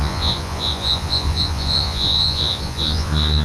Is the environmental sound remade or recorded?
remade